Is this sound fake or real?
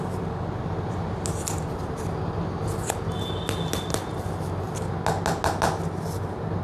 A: real